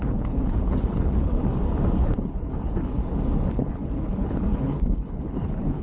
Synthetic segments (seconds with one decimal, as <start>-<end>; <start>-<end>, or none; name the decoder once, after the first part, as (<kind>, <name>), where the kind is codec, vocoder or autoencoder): 0.0-1.4 (codec, HILCodec); 2.0-3.0; 3.5-5.8